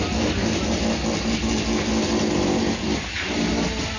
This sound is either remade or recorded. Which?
recorded